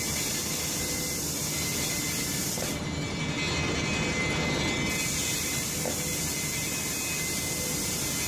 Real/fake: real